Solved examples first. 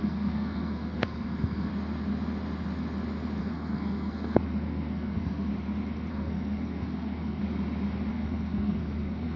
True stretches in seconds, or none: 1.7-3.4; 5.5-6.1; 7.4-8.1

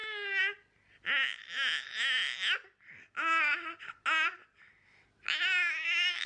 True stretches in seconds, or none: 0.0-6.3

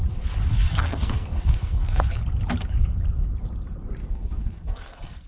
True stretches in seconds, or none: 0.0-0.5; 2.2-4.0

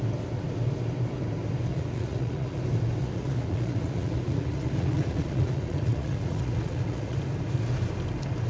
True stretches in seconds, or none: 0.0-1.7; 2.6-3.0; 7.2-8.5

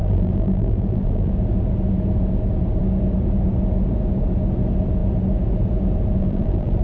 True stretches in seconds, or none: 1.3-6.2